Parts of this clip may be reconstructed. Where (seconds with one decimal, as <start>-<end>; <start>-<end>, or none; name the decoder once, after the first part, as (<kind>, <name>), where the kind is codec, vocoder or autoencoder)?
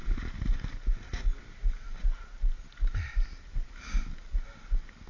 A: none